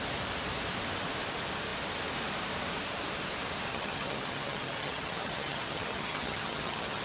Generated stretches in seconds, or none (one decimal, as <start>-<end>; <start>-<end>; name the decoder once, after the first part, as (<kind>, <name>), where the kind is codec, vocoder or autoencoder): 3.7-7.0 (vocoder, HiFi-GAN)

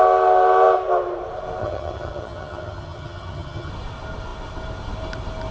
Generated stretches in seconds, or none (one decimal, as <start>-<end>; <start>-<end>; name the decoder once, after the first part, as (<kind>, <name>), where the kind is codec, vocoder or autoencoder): 1.6-3.7 (vocoder, HiFi-GAN)

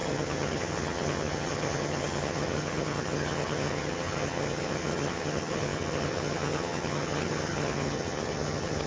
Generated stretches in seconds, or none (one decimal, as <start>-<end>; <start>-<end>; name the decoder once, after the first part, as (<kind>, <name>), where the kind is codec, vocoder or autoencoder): 0.0-8.9 (vocoder, HiFi-GAN)

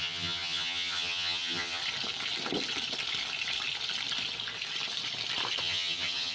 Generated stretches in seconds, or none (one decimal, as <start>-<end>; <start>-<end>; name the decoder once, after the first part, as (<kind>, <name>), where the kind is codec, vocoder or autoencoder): 0.0-1.8 (vocoder, HiFi-GAN); 5.6-6.3

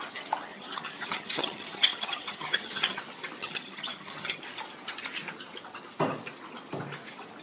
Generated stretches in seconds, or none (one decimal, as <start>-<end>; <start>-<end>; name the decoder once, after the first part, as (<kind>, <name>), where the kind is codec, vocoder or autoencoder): 0.5-3.0 (vocoder, HiFi-GAN); 3.4-4.4